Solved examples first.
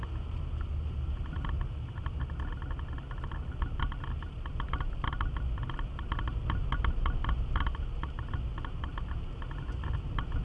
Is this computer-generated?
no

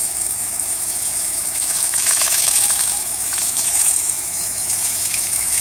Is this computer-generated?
yes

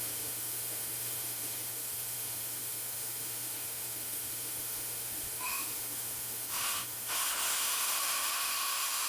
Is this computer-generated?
yes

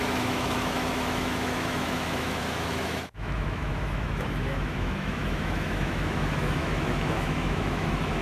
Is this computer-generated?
yes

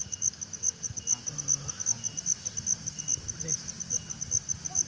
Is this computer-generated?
no